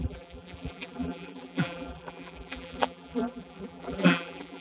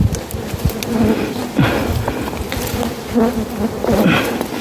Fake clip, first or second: first